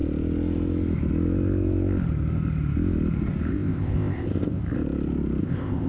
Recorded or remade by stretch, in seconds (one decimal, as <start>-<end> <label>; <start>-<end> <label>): 0.0-3.5 recorded; 3.5-4.6 remade; 4.6-5.4 recorded; 5.4-5.9 remade